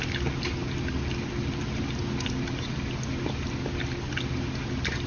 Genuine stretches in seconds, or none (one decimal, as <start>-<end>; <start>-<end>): 0.0-5.1